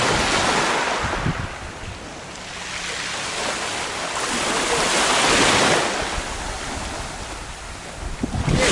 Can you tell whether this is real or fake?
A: real